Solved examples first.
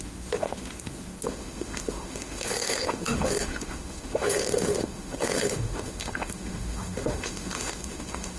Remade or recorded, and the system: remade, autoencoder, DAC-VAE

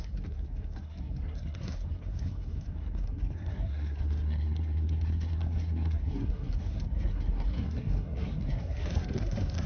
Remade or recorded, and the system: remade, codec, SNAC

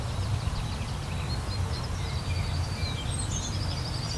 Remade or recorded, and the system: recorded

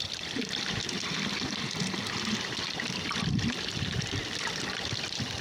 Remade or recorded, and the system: recorded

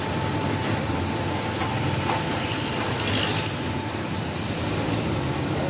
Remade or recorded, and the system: recorded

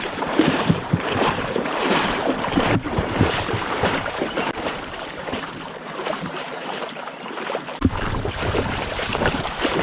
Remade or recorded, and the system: remade, vocoder, BigVGAN v2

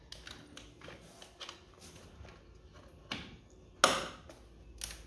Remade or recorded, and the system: recorded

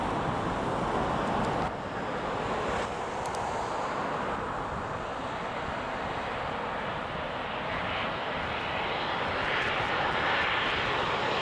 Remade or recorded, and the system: recorded